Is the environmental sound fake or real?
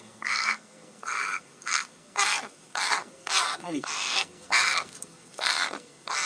fake